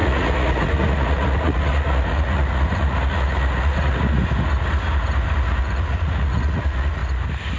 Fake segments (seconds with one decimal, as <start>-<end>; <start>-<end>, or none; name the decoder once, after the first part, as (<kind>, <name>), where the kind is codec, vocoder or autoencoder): 0.0-4.2 (vocoder, Vocos); 5.6-7.0